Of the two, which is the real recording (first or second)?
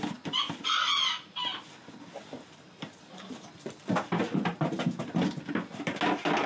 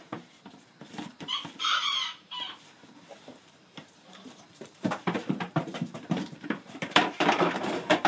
first